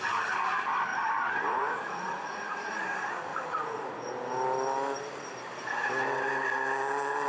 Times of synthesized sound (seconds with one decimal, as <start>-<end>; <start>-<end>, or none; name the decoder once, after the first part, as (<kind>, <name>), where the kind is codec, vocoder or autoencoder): 0.9-2.7 (vocoder, Vocos); 3.3-4.1